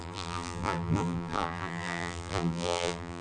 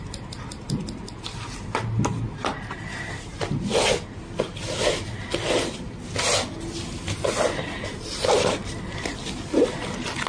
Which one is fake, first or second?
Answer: first